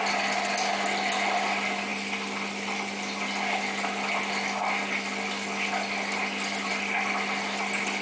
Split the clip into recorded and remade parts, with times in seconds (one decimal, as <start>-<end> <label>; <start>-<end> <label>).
0.0-8.0 recorded